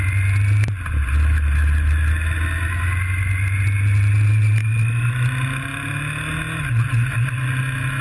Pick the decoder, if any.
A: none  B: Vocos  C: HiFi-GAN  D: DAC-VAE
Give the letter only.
A